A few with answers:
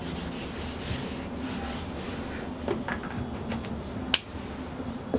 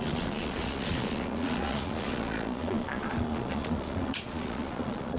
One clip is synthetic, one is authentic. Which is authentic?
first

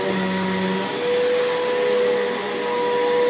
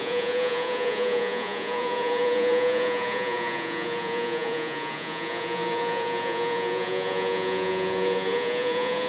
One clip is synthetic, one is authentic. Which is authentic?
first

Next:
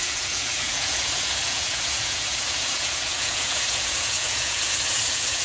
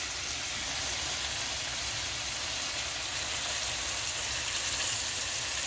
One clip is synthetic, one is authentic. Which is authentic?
second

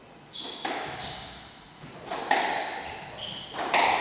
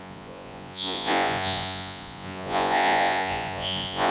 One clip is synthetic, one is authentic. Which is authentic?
first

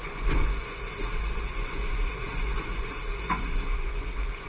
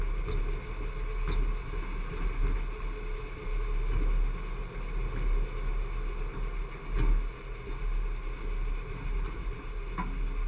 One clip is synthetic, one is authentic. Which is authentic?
second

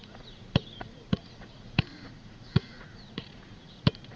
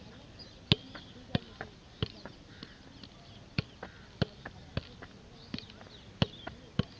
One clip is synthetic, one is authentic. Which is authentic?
second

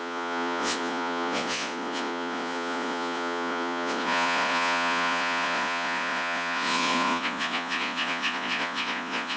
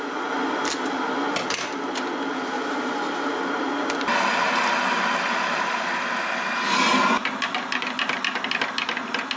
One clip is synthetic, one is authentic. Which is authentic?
second